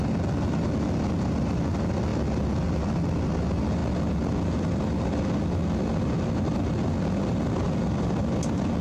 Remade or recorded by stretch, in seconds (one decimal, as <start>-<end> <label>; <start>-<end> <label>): 0.0-8.8 recorded